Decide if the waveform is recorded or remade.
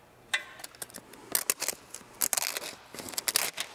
recorded